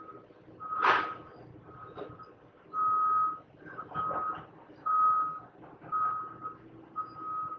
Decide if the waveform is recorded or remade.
recorded